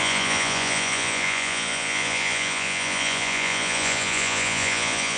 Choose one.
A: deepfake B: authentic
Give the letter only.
A